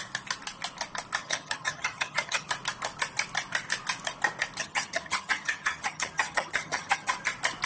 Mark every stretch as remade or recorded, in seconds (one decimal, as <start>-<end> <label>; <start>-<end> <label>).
0.0-1.2 recorded; 1.2-2.5 remade; 2.5-4.6 recorded; 4.6-7.1 remade; 7.1-7.7 recorded